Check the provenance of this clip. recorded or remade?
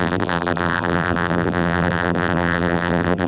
remade